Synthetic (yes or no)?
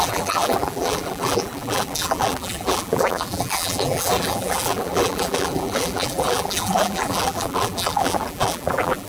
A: yes